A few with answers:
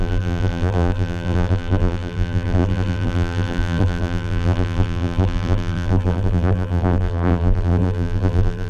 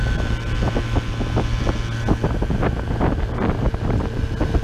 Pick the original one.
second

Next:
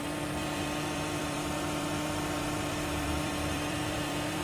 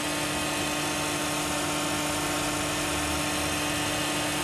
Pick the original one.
second